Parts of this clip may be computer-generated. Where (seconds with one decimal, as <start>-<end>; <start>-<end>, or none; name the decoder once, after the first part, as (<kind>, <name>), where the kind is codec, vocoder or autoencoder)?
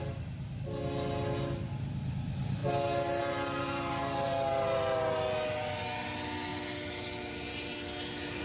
none